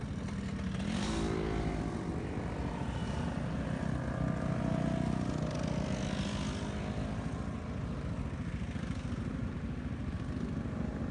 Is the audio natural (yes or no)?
yes